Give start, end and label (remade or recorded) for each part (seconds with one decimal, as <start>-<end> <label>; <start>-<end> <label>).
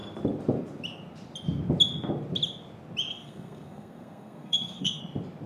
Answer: 0.0-3.1 recorded; 3.1-5.0 remade; 5.0-5.5 recorded